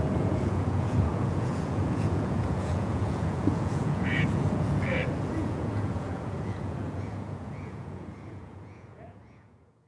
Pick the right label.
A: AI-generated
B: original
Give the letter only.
A